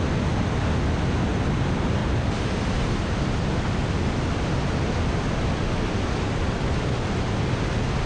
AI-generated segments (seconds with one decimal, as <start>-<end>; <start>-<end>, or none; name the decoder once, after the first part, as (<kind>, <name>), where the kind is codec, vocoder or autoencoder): 2.0-3.3 (vocoder, BigVGAN v2)